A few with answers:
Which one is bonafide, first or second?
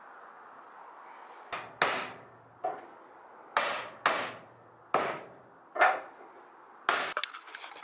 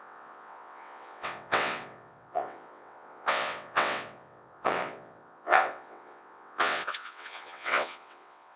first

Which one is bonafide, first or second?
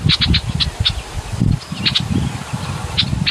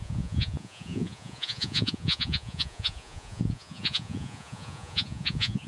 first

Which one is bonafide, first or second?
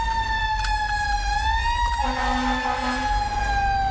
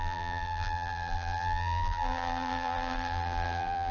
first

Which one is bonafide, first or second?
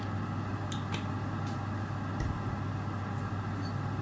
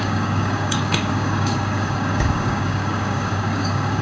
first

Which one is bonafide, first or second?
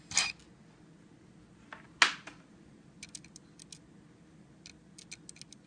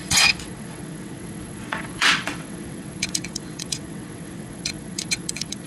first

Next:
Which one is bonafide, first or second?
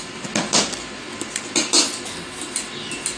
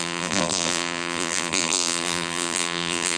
first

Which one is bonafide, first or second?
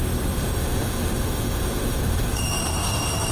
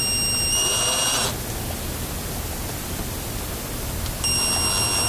second